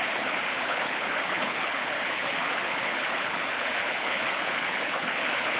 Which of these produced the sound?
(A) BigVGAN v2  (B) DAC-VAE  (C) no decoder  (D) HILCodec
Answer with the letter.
D